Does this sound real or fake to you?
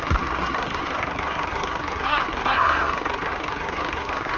fake